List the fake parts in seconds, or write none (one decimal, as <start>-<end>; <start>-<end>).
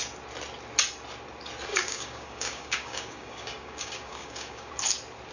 1.7-4.7